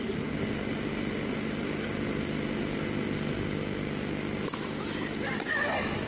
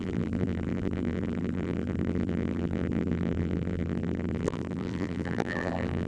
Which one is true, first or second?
first